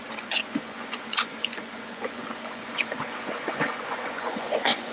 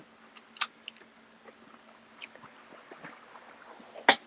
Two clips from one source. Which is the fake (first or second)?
first